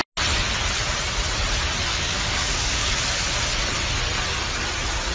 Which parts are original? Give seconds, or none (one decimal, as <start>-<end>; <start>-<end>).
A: 0.0-1.9; 2.9-5.1